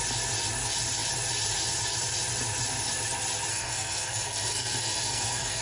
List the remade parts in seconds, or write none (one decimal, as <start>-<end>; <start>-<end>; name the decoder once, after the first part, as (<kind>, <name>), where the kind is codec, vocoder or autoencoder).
3.5-5.6 (codec, SNAC)